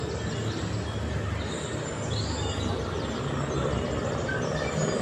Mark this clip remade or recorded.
recorded